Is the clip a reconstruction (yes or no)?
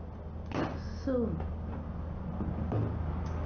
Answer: no